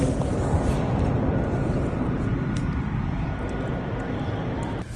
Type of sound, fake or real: real